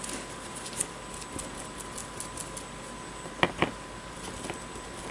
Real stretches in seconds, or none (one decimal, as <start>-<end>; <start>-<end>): 0.0-5.1